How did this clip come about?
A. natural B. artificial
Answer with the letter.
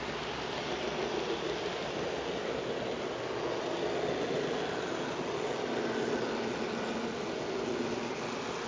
A